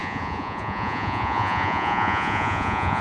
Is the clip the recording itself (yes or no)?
no